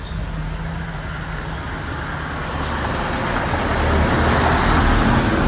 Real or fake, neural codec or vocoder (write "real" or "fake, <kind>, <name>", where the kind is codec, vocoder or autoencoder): real